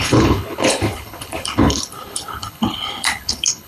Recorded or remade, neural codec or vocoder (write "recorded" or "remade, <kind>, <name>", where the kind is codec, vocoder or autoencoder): remade, codec, HILCodec